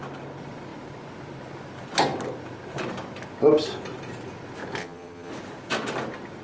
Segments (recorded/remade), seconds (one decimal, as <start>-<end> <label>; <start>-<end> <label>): 0.0-4.8 recorded; 4.8-5.3 remade; 5.3-6.4 recorded